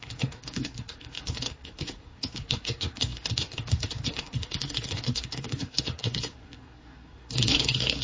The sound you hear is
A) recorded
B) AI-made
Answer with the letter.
B